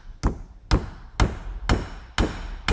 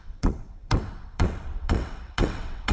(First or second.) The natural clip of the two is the first